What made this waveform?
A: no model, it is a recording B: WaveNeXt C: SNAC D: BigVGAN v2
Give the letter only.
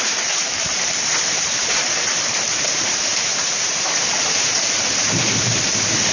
D